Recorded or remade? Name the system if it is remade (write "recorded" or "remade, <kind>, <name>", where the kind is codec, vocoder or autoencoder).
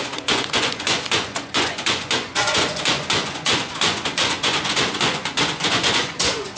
remade, vocoder, Vocos